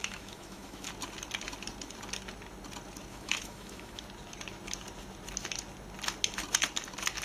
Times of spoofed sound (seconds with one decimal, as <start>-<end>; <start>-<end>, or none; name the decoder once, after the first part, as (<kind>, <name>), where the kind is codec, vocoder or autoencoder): 0.0-0.9 (autoencoder, DAC-VAE); 3.1-4.0